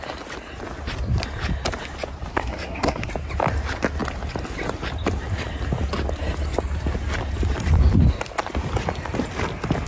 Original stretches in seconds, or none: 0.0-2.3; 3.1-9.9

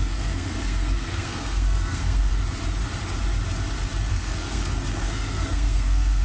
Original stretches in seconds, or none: 2.3-4.1

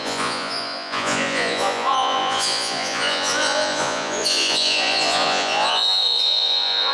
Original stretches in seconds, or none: none

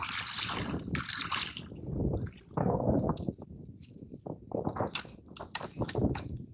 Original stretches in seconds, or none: 0.0-2.6; 3.1-6.5

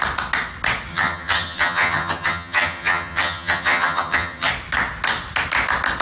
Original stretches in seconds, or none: 0.0-0.9; 4.5-6.0